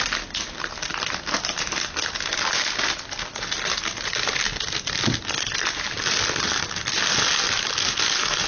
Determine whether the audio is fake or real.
real